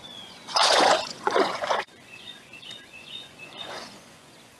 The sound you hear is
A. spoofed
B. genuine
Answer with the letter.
A